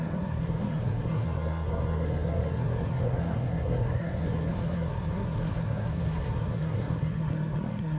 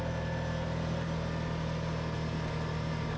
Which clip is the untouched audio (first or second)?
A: second